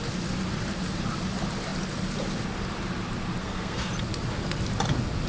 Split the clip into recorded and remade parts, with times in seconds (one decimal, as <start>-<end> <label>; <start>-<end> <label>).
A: 0.0-3.4 recorded; 3.4-3.9 remade; 3.9-5.3 recorded